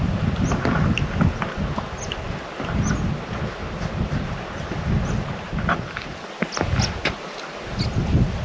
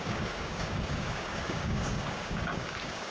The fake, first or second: second